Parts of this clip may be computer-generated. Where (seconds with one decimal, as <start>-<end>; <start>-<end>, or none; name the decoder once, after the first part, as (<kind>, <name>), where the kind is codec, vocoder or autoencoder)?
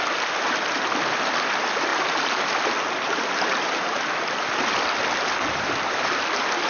none